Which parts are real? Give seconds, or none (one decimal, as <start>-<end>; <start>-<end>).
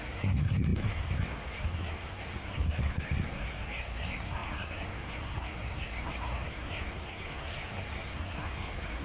none